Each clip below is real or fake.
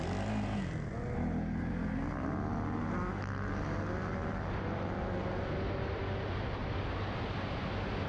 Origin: real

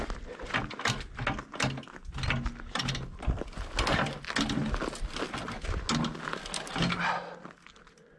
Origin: real